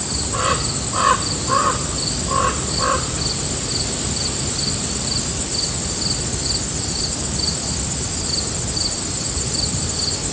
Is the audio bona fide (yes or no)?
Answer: yes